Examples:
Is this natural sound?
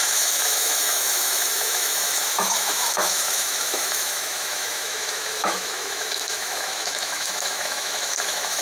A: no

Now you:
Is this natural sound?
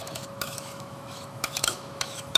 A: no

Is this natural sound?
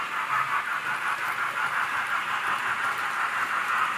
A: yes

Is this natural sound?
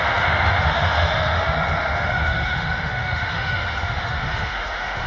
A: no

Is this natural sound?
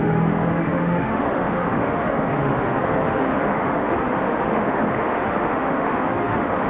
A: no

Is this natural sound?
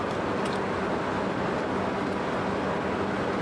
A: yes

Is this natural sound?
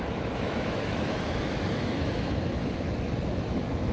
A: no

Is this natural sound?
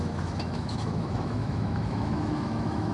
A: no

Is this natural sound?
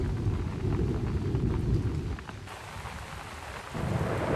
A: yes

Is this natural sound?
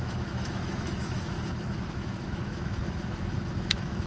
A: no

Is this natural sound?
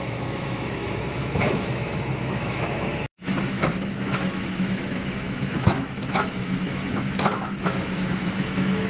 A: no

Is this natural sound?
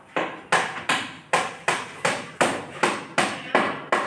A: yes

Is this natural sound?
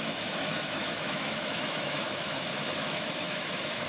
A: no